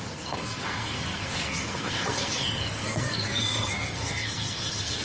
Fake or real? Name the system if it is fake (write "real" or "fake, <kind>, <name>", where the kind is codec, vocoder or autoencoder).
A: fake, codec, SNAC